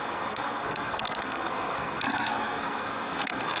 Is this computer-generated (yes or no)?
yes